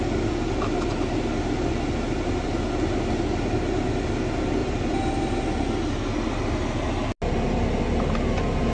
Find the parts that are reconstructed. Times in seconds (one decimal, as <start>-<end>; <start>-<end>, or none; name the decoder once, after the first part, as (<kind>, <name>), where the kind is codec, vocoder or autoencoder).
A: 4.6-5.4 (vocoder, BigVGAN v2)